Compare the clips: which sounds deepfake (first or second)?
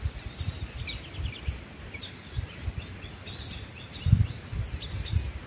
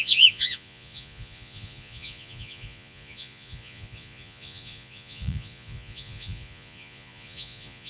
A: second